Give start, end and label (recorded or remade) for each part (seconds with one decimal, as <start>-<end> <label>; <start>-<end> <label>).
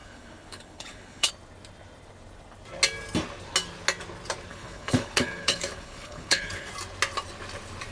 0.0-1.3 remade; 1.3-4.5 recorded; 4.5-6.7 remade; 6.7-7.9 recorded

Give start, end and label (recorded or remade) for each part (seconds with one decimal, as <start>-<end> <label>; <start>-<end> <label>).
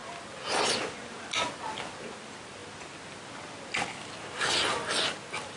0.0-5.6 recorded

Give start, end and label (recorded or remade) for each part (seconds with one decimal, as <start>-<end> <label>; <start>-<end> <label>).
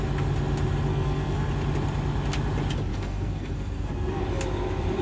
0.0-0.9 recorded; 0.9-1.5 remade; 1.5-2.9 recorded; 2.9-4.2 remade; 4.2-5.0 recorded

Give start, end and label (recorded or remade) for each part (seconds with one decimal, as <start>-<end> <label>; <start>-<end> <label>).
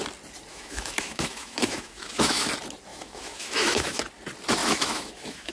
0.0-0.5 recorded; 0.5-2.5 remade; 2.5-2.9 recorded; 2.9-4.0 remade; 4.0-4.6 recorded; 4.6-5.5 remade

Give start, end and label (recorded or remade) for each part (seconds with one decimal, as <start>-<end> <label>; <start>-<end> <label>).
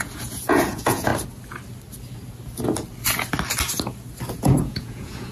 0.0-1.1 remade; 1.1-4.3 recorded; 4.3-5.3 remade